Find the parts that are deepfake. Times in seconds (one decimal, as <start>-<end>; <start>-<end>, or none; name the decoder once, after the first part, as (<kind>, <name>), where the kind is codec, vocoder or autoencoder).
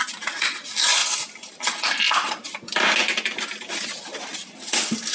none